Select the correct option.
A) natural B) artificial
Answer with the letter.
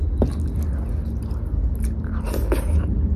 A